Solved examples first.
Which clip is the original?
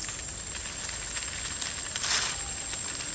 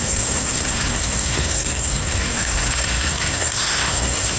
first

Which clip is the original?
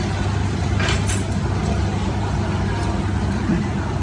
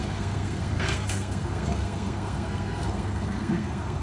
first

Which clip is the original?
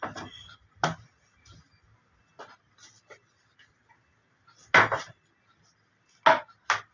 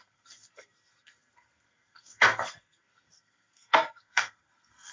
first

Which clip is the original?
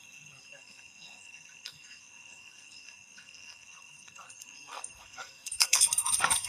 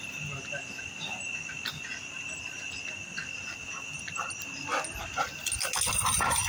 second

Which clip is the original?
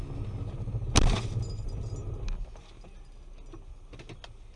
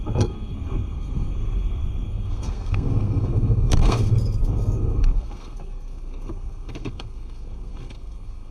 first